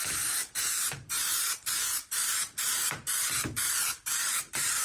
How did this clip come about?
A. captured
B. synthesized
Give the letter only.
B